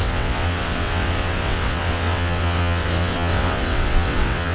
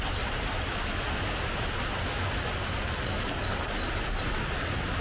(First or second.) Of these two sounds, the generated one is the first